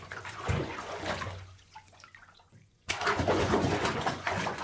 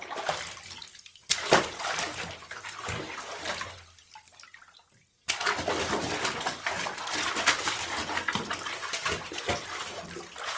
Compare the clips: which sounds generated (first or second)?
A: first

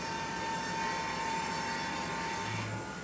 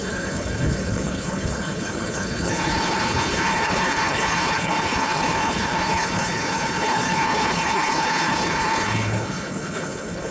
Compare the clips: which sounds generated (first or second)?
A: second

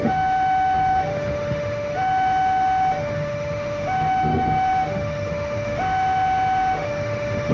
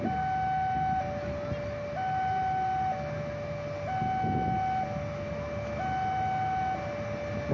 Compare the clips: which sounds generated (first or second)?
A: first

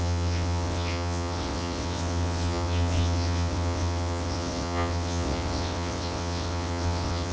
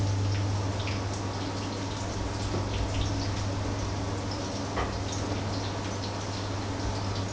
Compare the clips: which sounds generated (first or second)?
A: first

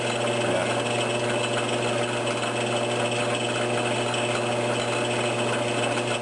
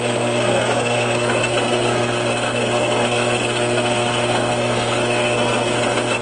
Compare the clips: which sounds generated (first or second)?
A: second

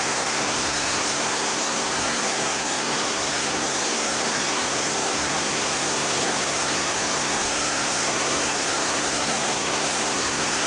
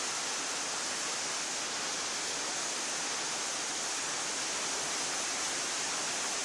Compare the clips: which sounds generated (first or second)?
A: first